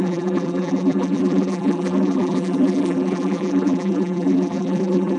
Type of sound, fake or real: fake